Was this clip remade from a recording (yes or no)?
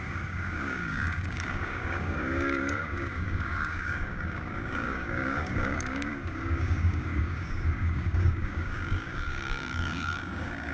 yes